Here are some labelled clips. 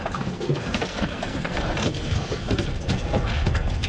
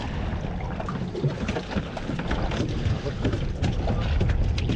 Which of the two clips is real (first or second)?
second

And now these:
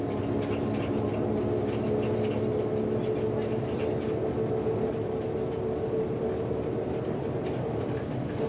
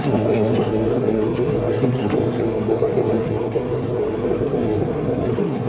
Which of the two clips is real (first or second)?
first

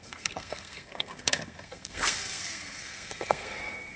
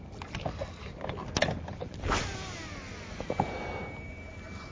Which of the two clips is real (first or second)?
second